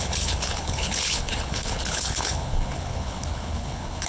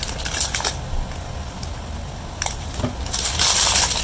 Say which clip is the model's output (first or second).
first